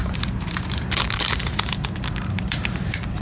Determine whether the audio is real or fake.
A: fake